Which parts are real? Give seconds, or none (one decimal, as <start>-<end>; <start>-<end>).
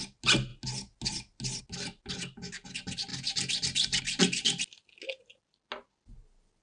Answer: 0.0-6.6